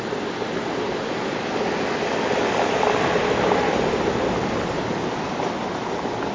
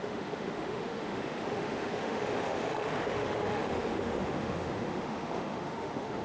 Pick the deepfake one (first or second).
second